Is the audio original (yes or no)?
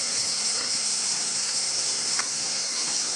no